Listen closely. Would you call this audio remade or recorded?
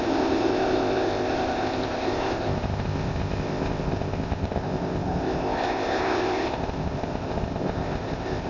remade